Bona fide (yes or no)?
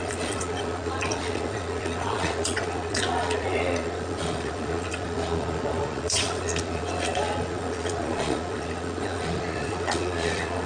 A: no